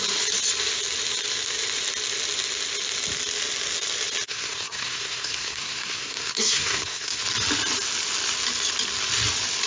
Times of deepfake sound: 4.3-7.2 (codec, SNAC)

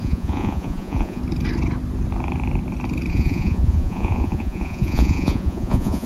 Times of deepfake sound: 0.0-1.2 (vocoder, Vocos); 3.1-6.1

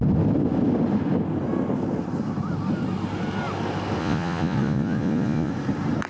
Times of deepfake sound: 4.0-5.5 (vocoder, Vocos)

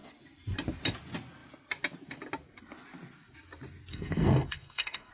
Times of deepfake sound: 3.9-5.1 (codec, SNAC)

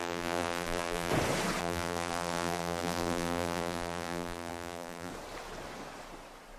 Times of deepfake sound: 0.0-1.1 (vocoder, BigVGAN v2); 1.6-5.1

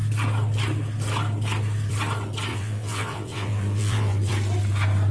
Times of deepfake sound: 2.5-4.3 (vocoder, WaveNeXt)

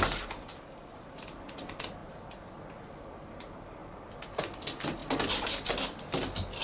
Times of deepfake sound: none

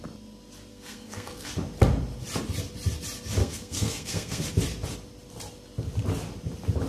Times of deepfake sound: 0.7-1.5 (codec, SNAC); 3.4-4.4